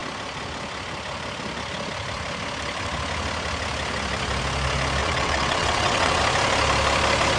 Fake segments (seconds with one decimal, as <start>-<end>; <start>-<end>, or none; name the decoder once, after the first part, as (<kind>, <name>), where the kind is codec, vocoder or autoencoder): 5.0-6.2 (vocoder, WaveNeXt)

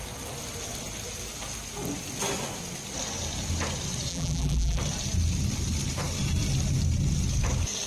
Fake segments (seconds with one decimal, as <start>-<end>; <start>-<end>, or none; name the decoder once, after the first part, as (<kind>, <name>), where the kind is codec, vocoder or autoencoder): 4.1-4.8 (vocoder, BigVGAN v2)

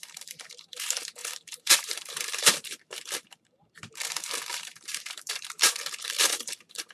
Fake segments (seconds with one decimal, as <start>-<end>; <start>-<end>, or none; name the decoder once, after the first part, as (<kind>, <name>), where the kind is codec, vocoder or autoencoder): 0.0-6.9 (vocoder, BigVGAN v2)

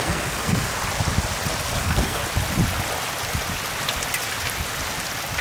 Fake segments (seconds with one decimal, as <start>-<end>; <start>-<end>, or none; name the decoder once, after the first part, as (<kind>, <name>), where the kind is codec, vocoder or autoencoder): 0.0-0.7 (codec, SNAC); 1.8-2.2

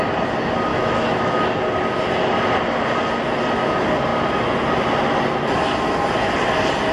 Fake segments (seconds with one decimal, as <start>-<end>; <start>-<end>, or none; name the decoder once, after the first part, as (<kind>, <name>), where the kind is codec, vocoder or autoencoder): 0.7-1.5 (autoencoder, DAC-VAE)

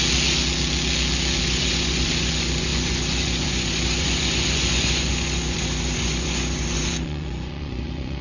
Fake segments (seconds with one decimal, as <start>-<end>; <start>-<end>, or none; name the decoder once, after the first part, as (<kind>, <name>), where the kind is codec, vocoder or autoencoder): 1.4-8.2 (vocoder, Vocos)

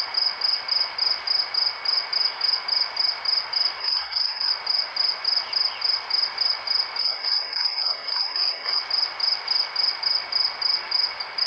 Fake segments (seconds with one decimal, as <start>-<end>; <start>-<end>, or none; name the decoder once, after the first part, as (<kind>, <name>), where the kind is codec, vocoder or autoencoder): 3.8-4.5 (codec, SNAC); 7.0-8.8

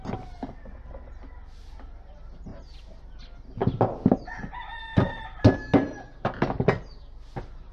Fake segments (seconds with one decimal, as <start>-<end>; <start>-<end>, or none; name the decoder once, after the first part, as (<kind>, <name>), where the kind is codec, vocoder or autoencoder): none